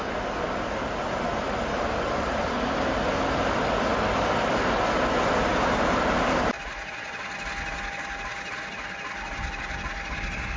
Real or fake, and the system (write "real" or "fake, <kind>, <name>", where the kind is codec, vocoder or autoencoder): real